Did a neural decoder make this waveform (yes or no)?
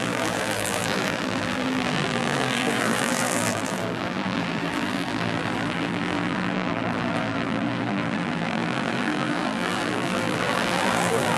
yes